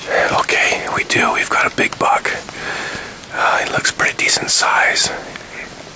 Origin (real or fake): real